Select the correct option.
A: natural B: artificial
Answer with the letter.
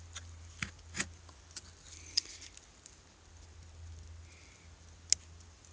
A